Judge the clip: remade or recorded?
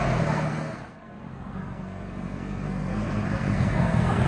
remade